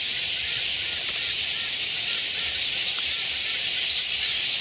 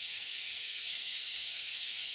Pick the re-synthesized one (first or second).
second